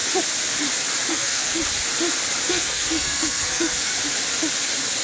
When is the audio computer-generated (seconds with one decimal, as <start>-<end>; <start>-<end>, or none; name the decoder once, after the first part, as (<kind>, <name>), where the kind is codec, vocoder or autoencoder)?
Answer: 1.1-1.6 (codec, SNAC); 2.5-3.9